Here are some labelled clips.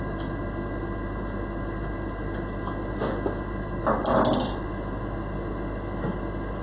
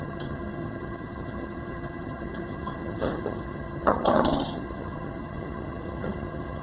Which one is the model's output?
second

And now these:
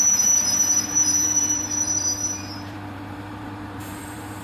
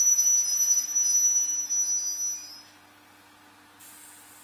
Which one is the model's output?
first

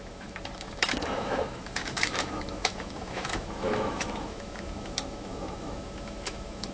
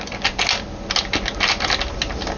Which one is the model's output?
first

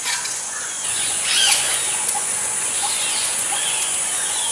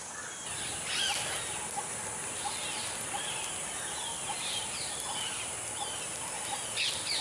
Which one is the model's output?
first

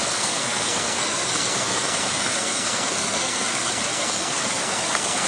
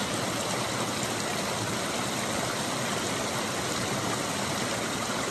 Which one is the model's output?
first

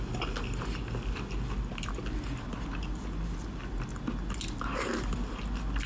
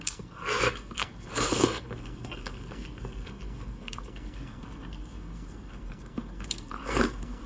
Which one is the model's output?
second